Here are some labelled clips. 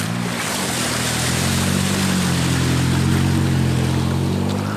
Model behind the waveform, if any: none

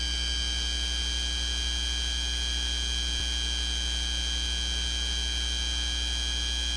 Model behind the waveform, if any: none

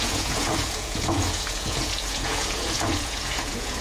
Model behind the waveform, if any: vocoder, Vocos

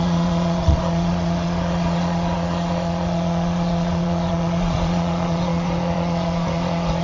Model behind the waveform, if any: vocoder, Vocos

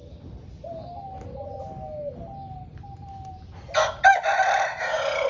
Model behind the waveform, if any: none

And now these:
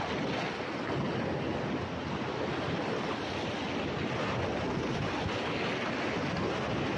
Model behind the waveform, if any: none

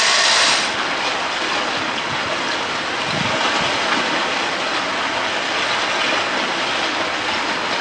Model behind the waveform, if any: none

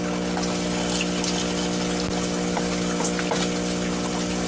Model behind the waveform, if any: none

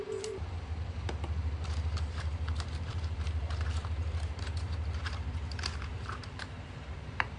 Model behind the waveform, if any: vocoder, BigVGAN v2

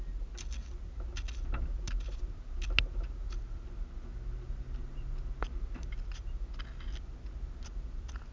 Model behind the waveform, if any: none